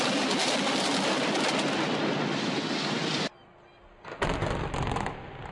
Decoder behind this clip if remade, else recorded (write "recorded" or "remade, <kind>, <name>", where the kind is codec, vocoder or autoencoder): recorded